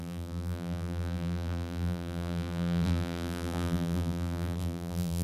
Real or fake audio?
fake